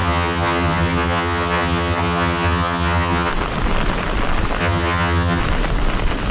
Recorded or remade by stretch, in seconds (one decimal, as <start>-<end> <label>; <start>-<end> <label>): 0.0-3.3 remade; 3.3-4.6 recorded; 4.6-5.4 remade; 5.4-6.3 recorded